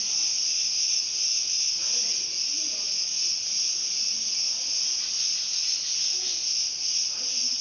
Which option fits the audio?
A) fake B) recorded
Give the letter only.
B